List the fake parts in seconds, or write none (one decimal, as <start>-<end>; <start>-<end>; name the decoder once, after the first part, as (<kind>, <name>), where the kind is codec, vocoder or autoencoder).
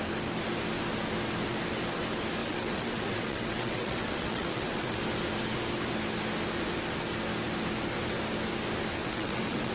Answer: 2.4-5.0 (vocoder, WaveNeXt); 9.0-9.7